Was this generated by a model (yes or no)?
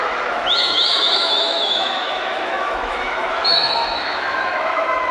yes